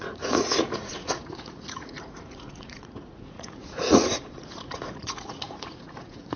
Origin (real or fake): fake